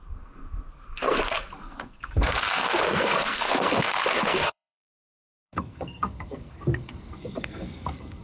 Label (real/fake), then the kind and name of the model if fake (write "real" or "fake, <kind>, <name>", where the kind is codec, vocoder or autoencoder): fake, codec, SNAC